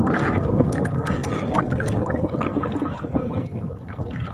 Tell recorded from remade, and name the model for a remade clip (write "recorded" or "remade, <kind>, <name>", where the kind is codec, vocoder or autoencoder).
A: remade, codec, SNAC